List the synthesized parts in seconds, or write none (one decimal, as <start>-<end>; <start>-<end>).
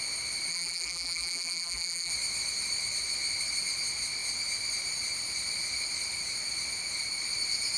0.5-2.1